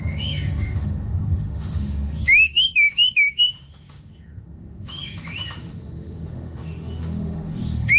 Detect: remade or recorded remade